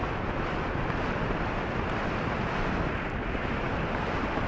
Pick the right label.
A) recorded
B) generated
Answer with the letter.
A